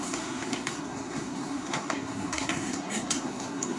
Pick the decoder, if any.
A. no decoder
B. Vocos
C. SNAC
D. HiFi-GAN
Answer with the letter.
C